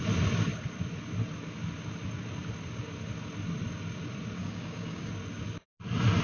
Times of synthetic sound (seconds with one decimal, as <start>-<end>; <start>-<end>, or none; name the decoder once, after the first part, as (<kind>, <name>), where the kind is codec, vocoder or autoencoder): 4.4-5.1 (codec, DAC)